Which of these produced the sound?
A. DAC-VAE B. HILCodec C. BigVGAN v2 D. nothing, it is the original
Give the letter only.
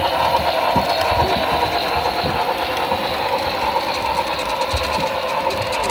D